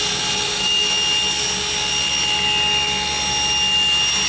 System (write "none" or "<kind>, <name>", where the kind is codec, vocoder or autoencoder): none